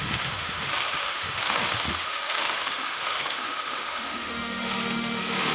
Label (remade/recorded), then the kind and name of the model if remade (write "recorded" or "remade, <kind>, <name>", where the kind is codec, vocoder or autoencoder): remade, autoencoder, DAC-VAE